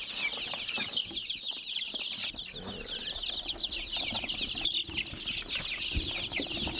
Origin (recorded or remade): recorded